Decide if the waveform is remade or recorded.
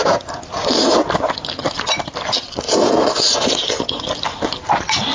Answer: recorded